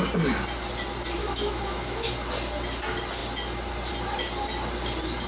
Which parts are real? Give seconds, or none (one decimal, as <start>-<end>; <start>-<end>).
0.0-1.2; 2.1-5.3